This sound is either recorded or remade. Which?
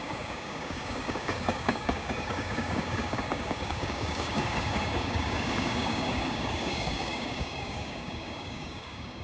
remade